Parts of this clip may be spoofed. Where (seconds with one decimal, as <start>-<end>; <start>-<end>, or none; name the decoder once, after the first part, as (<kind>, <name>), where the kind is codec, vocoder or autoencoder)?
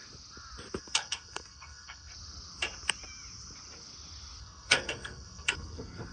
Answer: 0.8-2.1 (codec, SNAC); 4.4-6.1